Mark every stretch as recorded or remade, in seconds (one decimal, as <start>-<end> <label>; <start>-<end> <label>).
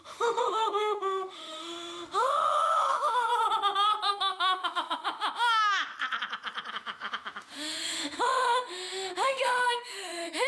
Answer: 0.0-3.3 remade; 3.3-4.1 recorded; 4.1-5.9 remade; 5.9-6.7 recorded; 6.7-10.5 remade